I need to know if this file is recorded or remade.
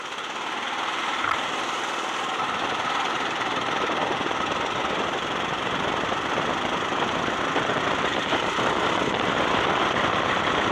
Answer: remade